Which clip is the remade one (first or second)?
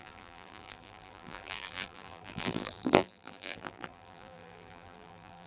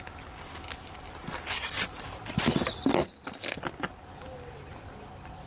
first